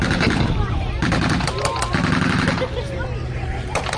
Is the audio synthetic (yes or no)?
no